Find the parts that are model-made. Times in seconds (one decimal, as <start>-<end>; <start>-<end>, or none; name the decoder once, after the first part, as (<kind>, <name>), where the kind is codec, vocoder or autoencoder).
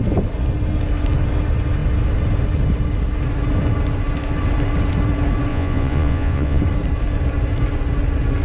5.5-6.6 (vocoder, Vocos)